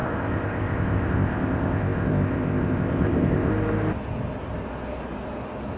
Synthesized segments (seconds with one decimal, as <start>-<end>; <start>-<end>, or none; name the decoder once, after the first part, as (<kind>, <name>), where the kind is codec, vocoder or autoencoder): 0.0-3.5 (codec, ZipCodec)